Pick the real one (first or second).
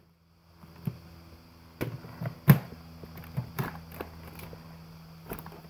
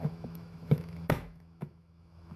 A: first